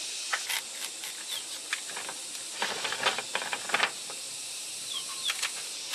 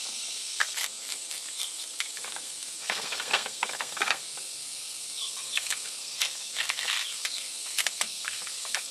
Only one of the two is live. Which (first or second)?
first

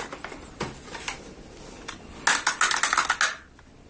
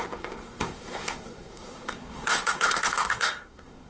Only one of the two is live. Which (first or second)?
first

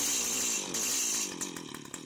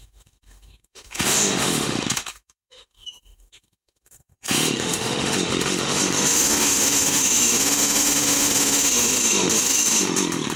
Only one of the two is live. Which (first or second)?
first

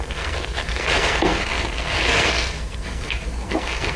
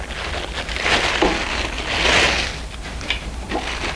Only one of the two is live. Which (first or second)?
second